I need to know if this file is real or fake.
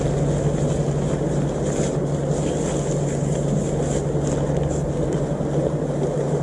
real